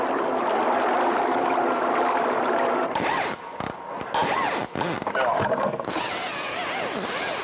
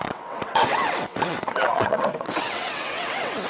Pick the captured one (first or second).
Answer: first